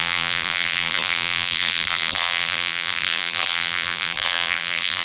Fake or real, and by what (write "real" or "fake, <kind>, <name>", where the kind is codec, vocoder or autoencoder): fake, vocoder, BigVGAN v2